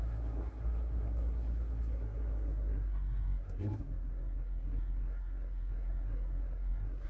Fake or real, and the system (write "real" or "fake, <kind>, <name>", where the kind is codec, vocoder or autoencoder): fake, codec, SNAC